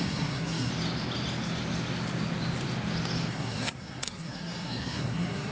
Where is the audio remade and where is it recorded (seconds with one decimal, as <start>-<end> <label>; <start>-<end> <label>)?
0.0-0.7 remade; 0.7-3.3 recorded; 3.3-5.5 remade